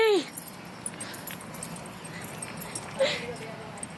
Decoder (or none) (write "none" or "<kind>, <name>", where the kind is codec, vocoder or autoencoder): none